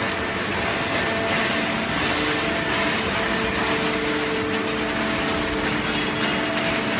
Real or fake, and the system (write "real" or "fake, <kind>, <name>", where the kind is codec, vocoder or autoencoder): real